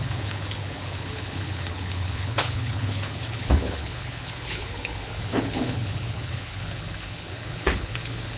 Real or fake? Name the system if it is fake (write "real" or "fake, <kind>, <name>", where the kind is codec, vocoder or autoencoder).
fake, codec, HILCodec